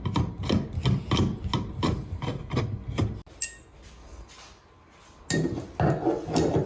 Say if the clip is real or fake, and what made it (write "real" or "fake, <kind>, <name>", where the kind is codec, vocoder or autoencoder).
real